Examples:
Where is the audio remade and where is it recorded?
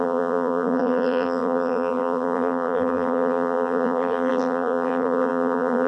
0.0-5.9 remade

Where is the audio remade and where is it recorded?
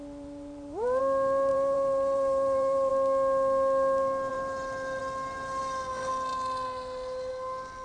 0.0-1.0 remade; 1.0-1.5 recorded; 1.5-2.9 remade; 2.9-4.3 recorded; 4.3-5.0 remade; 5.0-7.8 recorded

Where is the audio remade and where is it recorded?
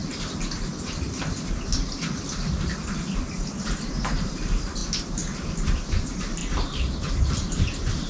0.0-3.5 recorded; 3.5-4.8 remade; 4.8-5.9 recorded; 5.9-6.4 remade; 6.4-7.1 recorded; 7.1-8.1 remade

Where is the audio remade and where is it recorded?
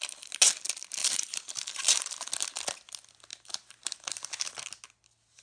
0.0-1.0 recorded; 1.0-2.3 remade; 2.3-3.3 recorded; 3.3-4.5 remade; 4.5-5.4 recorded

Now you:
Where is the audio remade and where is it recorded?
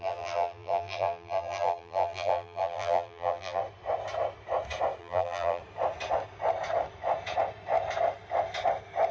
0.0-3.6 remade; 3.6-5.0 recorded; 5.0-5.6 remade; 5.6-9.1 recorded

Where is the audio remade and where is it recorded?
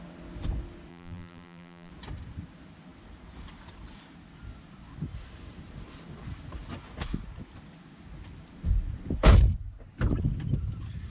0.0-0.9 recorded; 0.9-1.9 remade; 1.9-11.1 recorded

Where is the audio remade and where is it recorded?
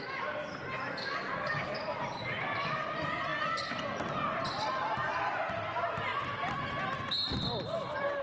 0.0-8.2 recorded